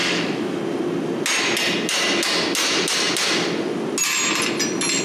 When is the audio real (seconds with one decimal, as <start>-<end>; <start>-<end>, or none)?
0.6-5.0